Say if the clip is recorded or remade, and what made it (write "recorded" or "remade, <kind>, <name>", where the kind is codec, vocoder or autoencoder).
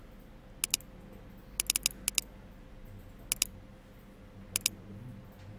recorded